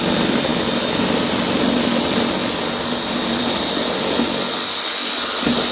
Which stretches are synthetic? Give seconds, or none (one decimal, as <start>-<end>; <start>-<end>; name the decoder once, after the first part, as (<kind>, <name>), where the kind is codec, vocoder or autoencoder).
0.5-1.9 (vocoder, BigVGAN v2); 2.4-3.6